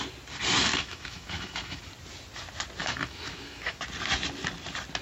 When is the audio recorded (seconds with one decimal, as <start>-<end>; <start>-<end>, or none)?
0.0-0.7; 1.8-2.8; 3.8-5.0